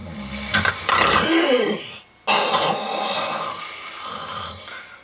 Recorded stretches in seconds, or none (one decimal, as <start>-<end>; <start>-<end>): 0.0-5.0